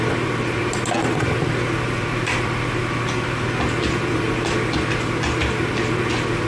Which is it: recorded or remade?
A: recorded